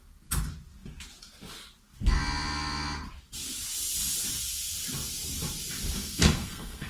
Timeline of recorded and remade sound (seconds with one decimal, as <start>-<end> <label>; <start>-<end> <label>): 0.0-6.0 recorded; 6.0-6.9 remade